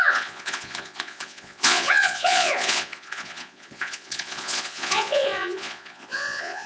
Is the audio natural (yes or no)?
no